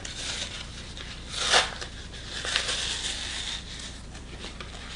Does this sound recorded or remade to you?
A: recorded